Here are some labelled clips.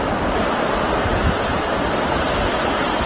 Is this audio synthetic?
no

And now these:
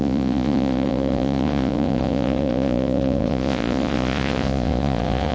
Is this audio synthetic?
yes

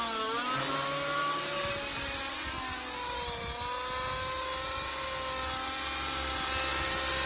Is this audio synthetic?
no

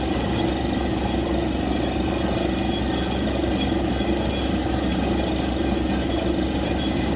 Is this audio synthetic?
no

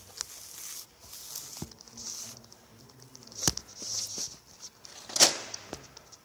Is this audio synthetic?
no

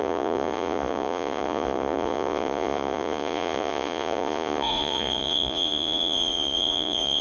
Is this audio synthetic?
yes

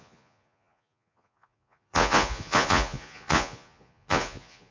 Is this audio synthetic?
yes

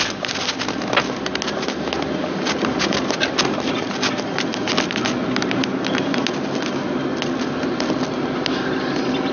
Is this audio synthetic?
no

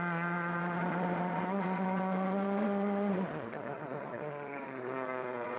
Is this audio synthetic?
yes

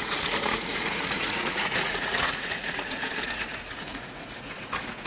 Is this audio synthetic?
yes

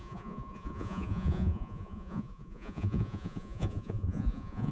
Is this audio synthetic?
yes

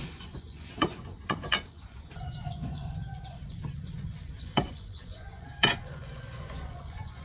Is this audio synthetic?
yes